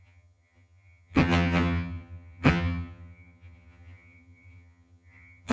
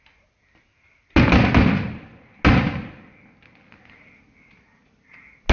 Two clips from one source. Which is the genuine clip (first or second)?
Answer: second